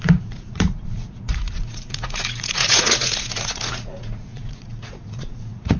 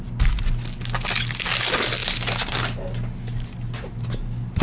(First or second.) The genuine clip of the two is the second